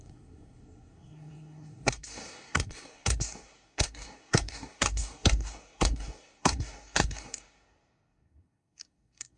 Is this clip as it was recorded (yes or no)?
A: no